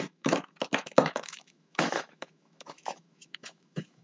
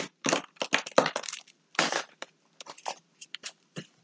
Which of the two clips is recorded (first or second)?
second